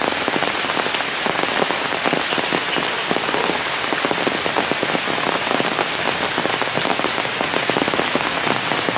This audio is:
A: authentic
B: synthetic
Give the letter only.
A